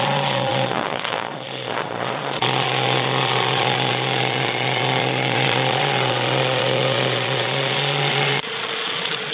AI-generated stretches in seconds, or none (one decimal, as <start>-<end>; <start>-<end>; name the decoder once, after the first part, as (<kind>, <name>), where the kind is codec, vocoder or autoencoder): 0.0-9.3 (vocoder, Vocos)

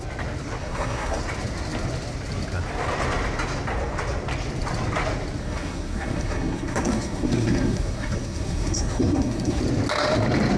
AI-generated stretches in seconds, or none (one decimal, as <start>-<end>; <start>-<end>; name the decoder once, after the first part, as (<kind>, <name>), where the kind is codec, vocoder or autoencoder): 0.6-1.2 (codec, SNAC); 5.4-9.6

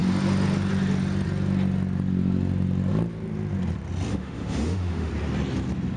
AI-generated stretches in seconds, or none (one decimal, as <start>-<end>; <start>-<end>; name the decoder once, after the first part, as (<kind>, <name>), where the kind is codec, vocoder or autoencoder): 4.1-5.1 (autoencoder, DAC-VAE)

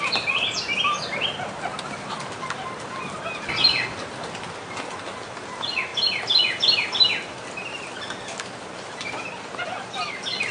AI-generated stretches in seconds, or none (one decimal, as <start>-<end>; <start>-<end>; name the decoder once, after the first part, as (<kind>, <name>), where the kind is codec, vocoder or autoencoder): 0.0-10.5 (vocoder, BigVGAN v2)

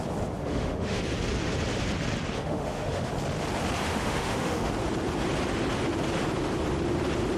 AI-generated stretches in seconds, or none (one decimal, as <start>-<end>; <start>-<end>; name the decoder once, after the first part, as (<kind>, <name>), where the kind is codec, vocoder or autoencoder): 0.4-1.0 (autoencoder, DAC-VAE); 2.4-3.1; 3.9-4.7

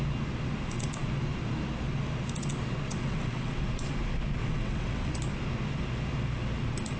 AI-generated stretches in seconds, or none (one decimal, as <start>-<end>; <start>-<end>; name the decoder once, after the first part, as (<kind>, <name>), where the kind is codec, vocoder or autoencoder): 3.0-3.6 (vocoder, WaveNeXt); 4.4-5.1

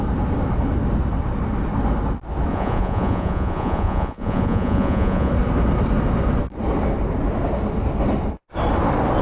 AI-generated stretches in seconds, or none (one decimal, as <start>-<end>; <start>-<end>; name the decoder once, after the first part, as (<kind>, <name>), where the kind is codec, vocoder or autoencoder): 2.5-5.3 (vocoder, Vocos)